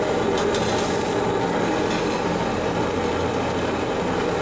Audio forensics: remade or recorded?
recorded